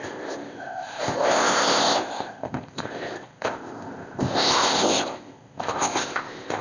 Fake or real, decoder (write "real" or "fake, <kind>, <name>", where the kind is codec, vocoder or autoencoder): fake, codec, ZipCodec